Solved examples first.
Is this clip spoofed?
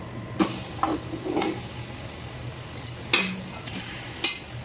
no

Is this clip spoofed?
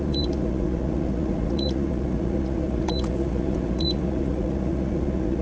yes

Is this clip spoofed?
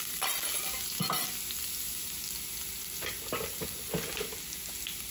no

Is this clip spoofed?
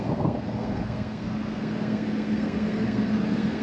yes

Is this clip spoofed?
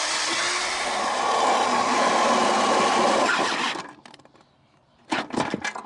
no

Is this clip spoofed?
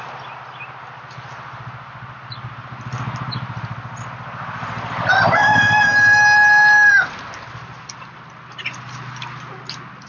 no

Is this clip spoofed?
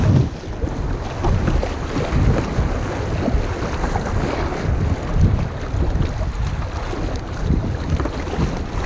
no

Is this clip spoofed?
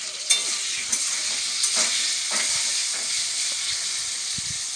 no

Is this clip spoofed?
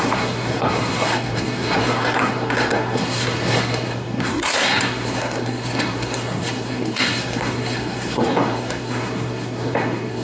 yes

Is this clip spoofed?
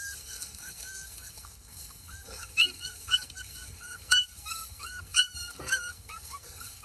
yes